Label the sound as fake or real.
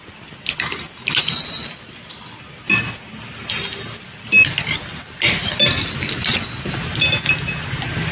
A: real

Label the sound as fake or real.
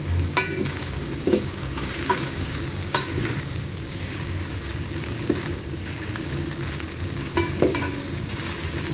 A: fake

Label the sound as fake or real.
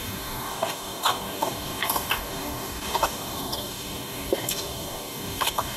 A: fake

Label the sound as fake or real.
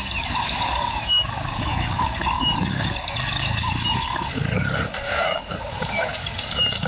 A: fake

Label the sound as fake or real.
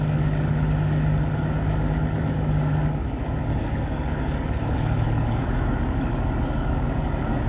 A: fake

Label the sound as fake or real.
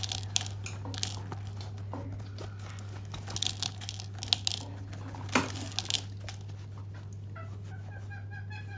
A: real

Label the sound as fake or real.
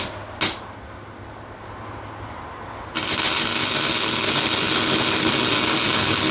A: real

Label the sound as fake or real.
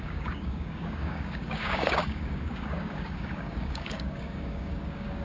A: fake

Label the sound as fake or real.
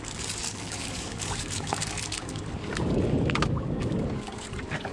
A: fake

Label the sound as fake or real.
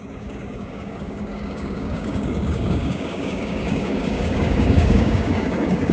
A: fake